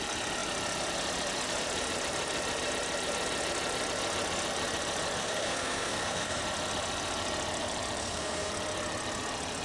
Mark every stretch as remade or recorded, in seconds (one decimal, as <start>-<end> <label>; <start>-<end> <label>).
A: 0.0-5.2 recorded; 5.2-6.4 remade; 6.4-8.0 recorded; 8.0-8.5 remade; 8.5-9.6 recorded

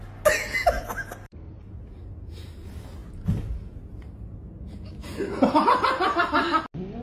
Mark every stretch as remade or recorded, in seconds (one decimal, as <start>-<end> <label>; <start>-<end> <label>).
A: 0.0-7.0 recorded

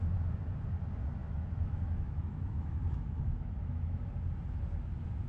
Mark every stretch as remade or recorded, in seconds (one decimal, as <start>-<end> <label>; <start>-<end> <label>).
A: 0.0-1.2 recorded; 1.2-4.1 remade; 4.1-5.3 recorded

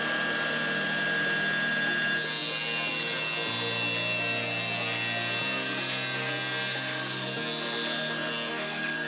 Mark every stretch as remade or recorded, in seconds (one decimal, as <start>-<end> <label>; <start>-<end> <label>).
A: 0.0-8.5 recorded; 8.5-9.1 remade

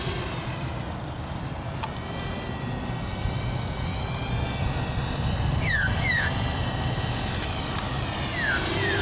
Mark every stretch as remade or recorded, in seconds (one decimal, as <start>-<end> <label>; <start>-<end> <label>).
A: 0.0-3.9 remade; 3.9-4.6 recorded; 4.6-9.0 remade